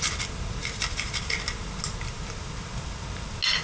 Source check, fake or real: real